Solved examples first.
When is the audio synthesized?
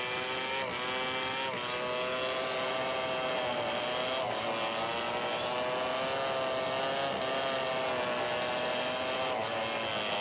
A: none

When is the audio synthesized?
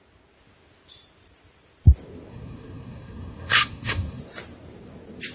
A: 2.3-4.2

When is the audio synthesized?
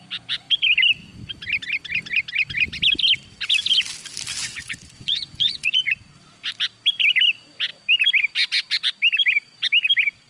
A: 4.4-5.9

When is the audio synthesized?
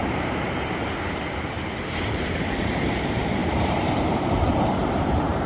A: 0.0-3.4; 4.0-5.5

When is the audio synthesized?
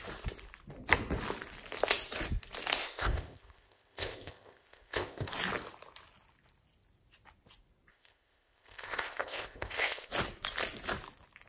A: 2.8-5.3; 7.9-10.1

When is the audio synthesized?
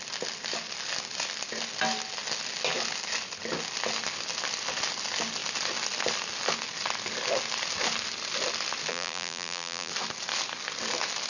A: 8.9-9.9